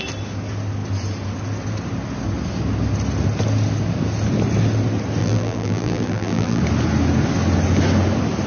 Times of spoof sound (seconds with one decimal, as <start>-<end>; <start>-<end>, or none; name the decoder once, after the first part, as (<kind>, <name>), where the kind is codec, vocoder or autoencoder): 5.2-6.6 (vocoder, BigVGAN v2)